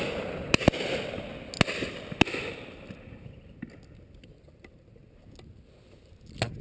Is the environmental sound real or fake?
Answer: real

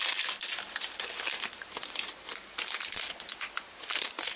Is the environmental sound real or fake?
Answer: real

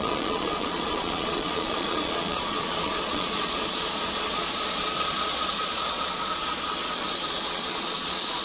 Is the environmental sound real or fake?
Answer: fake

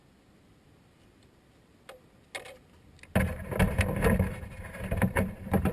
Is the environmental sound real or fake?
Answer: real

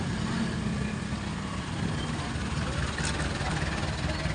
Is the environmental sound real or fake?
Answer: real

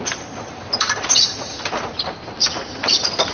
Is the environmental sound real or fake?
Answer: fake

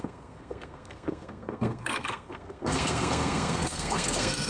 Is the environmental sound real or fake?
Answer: fake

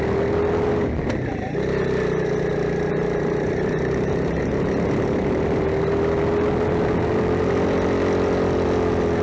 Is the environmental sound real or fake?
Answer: real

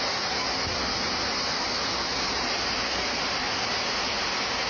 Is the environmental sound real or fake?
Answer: real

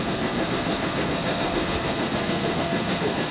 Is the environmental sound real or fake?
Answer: fake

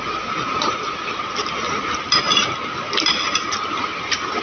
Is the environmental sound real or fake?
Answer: real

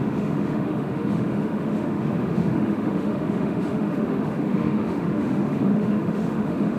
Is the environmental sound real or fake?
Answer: fake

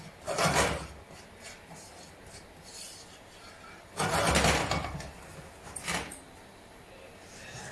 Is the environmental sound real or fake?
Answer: real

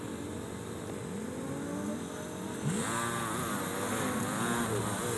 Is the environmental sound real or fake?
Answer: real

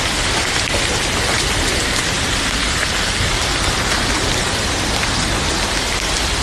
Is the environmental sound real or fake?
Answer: real